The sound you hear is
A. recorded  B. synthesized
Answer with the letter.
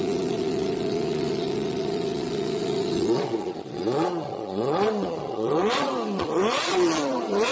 B